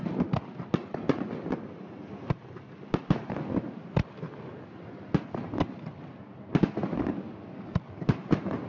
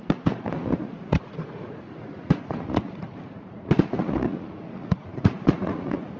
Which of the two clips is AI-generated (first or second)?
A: second